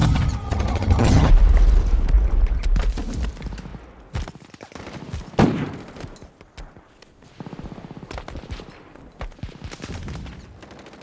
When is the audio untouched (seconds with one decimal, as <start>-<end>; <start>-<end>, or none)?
1.3-11.0